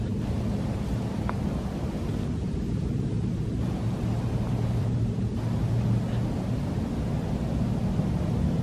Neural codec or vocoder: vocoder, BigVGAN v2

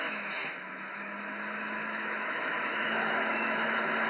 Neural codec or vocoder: autoencoder, DAC-VAE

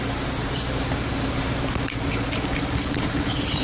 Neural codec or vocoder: vocoder, BigVGAN v2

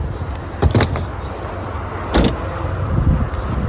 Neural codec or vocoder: none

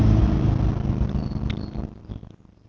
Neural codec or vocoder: none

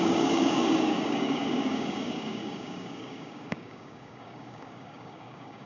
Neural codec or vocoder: codec, DAC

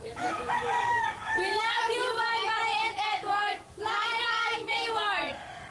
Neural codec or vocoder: codec, DAC